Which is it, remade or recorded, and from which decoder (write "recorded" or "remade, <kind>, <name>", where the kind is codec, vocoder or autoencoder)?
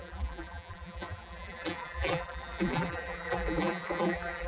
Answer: remade, vocoder, BigVGAN v2